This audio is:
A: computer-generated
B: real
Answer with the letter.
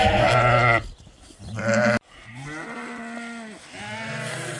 B